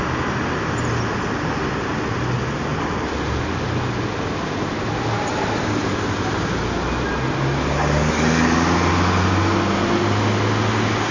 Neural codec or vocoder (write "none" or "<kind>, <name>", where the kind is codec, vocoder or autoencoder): none